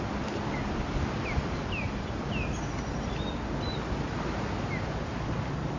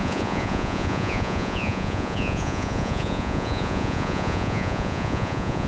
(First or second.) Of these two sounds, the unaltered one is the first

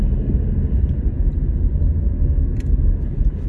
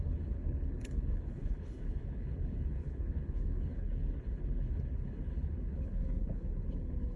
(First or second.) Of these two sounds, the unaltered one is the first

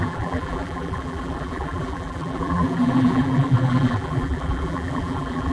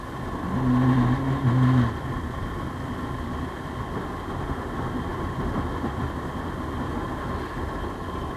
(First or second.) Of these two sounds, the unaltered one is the second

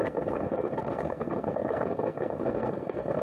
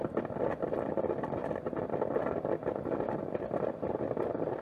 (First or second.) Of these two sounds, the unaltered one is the second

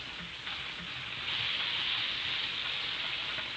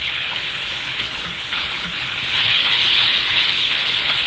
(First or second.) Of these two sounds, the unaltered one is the first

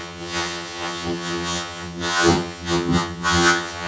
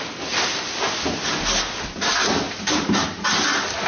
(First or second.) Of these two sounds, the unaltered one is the second